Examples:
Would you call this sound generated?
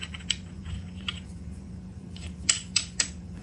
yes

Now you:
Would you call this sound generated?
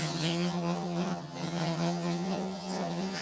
yes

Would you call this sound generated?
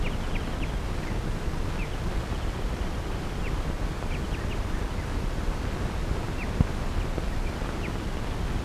no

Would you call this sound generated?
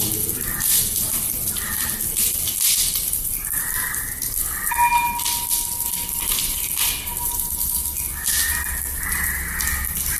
no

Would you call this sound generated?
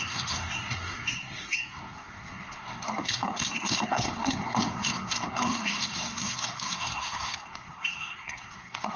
yes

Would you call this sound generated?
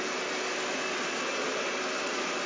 no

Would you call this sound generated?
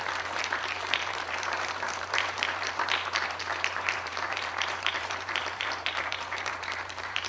yes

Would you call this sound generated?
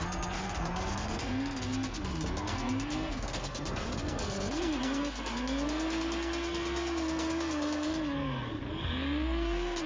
yes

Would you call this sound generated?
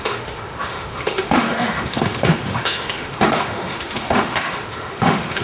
yes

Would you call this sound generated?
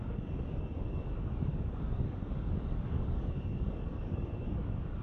yes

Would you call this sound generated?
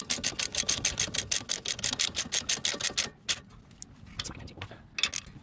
no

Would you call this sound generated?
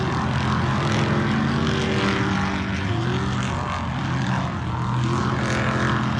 no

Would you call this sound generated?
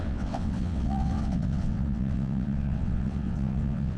yes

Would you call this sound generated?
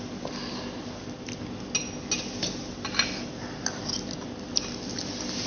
no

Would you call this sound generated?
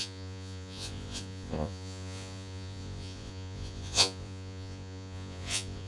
yes